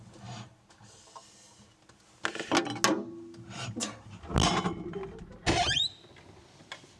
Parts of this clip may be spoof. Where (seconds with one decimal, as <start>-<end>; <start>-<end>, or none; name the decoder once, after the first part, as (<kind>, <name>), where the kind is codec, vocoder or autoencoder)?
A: none